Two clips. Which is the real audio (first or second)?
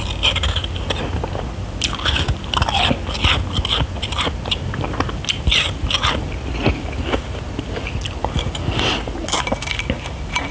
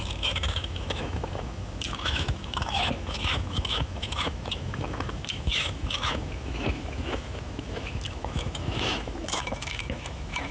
first